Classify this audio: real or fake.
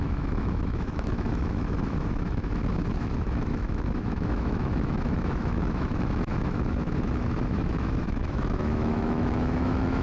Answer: fake